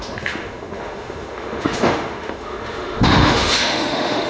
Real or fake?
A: fake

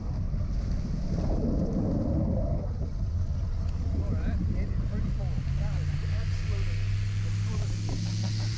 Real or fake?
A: real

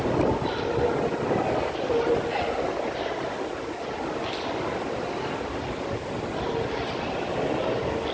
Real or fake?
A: real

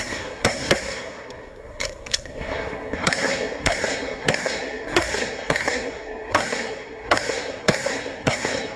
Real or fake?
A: fake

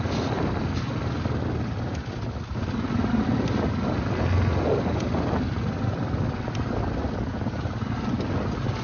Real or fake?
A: real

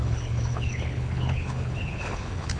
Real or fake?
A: fake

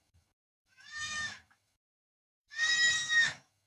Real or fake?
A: fake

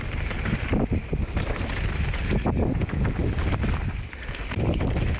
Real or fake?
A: real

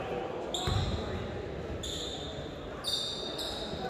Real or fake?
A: real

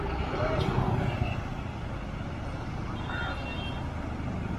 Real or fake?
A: real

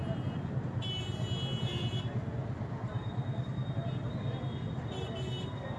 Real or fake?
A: real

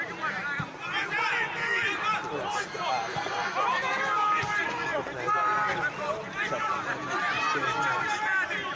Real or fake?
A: real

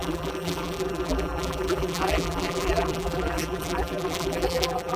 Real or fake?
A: fake